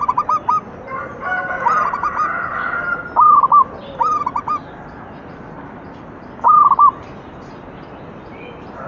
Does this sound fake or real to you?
real